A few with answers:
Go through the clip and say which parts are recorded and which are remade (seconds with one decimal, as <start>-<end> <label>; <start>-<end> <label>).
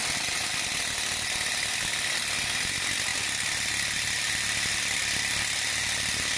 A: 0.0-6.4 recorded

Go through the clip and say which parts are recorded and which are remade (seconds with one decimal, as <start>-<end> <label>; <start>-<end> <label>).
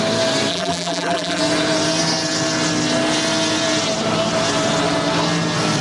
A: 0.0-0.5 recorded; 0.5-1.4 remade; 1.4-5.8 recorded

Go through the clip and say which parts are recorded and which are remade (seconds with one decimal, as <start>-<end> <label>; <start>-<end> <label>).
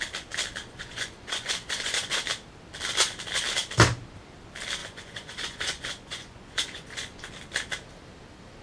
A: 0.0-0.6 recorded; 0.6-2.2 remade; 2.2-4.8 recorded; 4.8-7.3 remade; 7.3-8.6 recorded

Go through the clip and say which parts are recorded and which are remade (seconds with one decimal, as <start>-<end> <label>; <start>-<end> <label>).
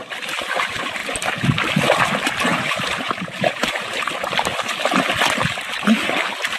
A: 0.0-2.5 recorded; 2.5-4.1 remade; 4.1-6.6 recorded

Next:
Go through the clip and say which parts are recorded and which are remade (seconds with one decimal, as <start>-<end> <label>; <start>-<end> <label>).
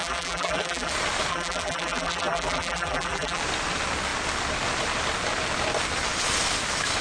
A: 0.0-0.9 remade; 0.9-1.3 recorded; 1.3-3.4 remade; 3.4-7.0 recorded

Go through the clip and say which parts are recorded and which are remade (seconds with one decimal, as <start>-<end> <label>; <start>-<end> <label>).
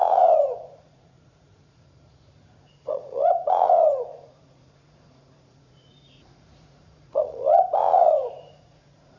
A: 0.0-9.2 remade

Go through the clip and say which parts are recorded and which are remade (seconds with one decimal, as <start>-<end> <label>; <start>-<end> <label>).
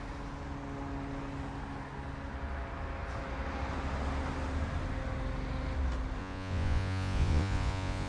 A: 0.0-6.2 recorded; 6.2-8.1 remade